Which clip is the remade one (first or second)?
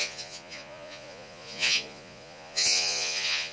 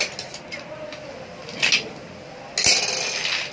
first